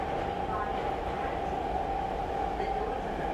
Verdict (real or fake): real